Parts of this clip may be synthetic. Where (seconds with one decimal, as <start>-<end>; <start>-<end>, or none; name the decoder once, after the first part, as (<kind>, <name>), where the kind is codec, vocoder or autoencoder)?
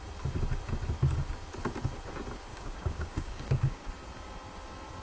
2.5-3.9 (codec, DAC)